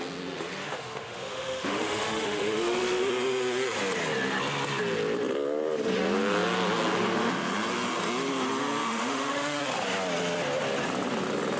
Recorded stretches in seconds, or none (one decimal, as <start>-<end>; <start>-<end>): 0.0-0.6; 3.1-8.8; 9.6-11.6